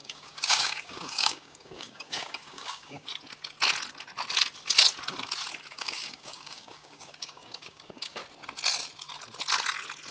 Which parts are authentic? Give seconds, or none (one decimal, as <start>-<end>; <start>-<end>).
3.1-5.7; 8.2-10.1